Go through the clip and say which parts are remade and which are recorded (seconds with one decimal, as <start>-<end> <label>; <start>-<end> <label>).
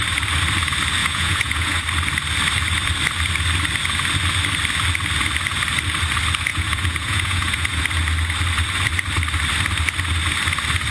0.0-1.0 recorded; 1.0-1.8 remade; 1.8-6.5 recorded; 6.5-7.7 remade; 7.7-10.9 recorded